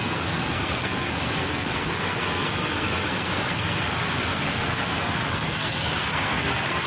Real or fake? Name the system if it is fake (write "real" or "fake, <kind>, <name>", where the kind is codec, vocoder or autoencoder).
fake, codec, SNAC